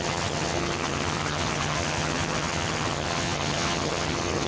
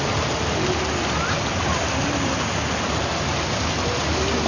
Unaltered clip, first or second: second